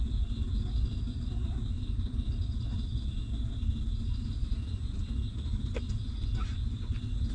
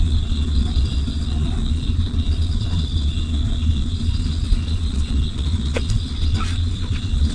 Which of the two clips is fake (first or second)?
second